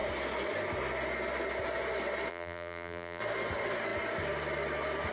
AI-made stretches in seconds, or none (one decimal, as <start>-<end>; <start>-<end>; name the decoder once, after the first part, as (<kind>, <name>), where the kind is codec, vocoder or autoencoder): 2.3-3.2 (vocoder, BigVGAN v2)